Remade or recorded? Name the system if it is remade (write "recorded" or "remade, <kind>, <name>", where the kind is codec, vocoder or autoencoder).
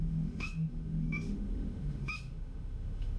remade, autoencoder, DAC-VAE